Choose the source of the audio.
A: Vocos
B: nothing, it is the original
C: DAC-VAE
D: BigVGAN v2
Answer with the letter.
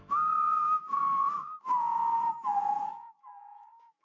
C